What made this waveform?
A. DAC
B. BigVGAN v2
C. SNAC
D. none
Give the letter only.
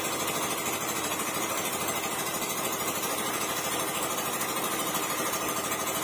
D